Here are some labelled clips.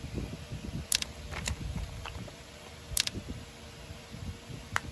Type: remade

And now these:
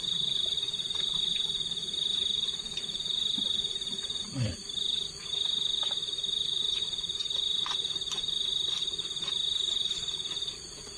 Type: remade